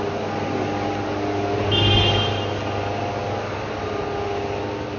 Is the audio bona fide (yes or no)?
yes